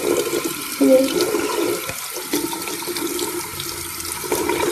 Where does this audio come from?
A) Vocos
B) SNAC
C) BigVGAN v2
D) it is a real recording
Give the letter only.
D